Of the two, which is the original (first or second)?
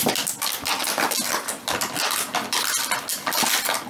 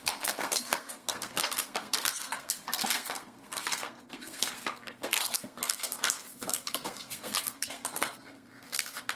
first